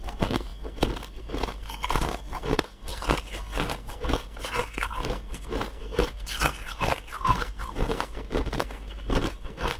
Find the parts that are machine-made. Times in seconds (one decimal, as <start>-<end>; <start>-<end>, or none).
0.0-9.8